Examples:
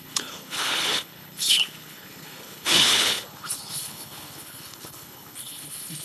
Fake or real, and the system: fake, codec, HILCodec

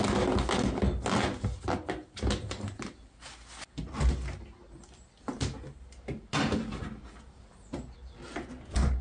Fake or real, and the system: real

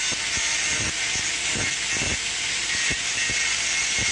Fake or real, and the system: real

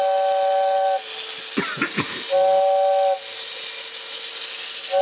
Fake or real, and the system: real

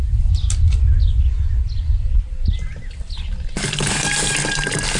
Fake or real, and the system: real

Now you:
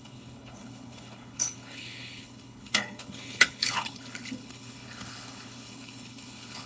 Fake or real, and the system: fake, codec, HILCodec